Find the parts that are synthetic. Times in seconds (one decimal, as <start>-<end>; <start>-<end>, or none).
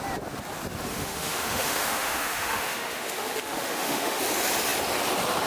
0.9-4.2